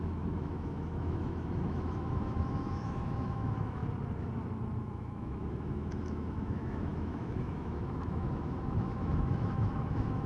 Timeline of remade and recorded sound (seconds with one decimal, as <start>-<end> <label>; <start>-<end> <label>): 0.0-3.8 remade; 3.8-4.8 recorded; 4.8-10.3 remade